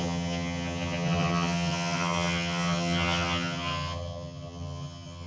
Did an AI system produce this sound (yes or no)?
yes